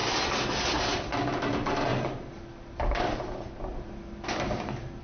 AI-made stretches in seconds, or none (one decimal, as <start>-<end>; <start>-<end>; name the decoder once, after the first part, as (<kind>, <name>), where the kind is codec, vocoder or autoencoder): none